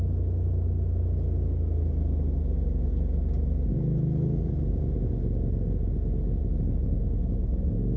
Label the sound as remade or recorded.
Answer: recorded